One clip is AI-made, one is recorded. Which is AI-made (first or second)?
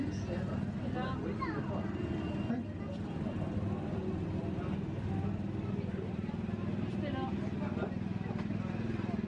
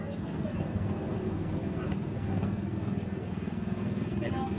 second